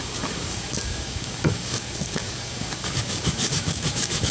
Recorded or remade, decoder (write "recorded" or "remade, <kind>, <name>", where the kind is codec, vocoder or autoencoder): remade, codec, DAC